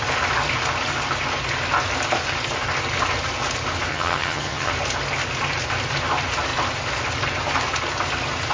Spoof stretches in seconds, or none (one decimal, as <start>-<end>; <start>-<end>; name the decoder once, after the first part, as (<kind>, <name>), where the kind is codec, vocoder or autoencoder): 3.9-4.7 (vocoder, HiFi-GAN)